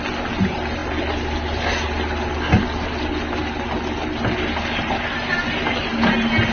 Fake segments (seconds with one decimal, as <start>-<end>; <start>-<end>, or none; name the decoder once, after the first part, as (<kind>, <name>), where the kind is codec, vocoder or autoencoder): none